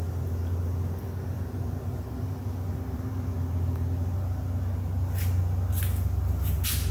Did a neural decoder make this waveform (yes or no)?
no